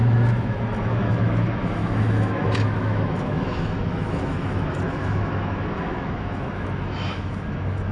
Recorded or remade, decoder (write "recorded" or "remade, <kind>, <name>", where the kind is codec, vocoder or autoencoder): remade, autoencoder, DAC-VAE